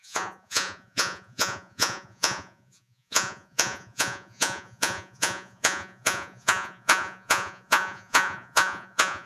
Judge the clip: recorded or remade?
remade